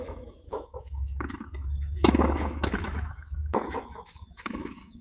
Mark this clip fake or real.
fake